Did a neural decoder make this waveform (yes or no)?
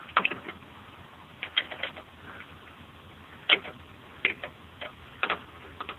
no